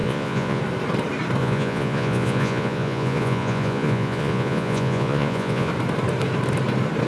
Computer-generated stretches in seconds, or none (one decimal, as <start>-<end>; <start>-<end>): 0.0-0.6; 1.4-5.7